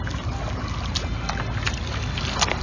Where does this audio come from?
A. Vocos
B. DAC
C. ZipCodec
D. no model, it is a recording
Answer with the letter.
D